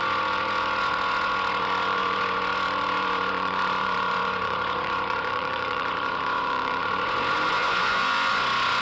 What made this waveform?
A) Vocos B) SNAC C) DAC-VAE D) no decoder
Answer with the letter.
A